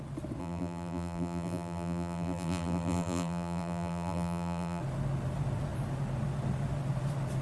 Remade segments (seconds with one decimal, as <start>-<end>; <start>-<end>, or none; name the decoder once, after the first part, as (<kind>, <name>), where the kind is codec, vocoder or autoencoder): 0.4-4.8 (vocoder, BigVGAN v2)